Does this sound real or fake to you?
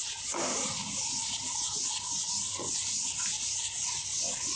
real